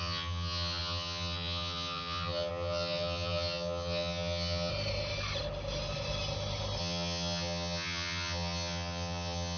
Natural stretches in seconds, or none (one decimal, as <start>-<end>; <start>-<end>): 4.7-6.8